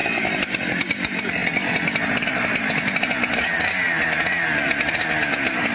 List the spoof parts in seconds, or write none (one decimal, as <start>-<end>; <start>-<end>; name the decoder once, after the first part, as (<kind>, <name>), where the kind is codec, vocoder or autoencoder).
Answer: none